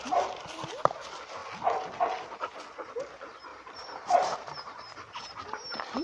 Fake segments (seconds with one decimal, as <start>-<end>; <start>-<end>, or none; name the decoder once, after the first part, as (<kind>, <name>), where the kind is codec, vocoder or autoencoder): 3.5-4.8 (vocoder, BigVGAN v2)